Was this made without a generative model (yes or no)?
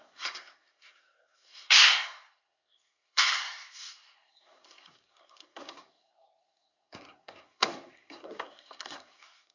no